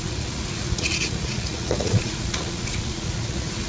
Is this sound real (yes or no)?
no